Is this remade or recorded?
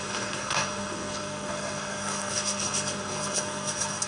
remade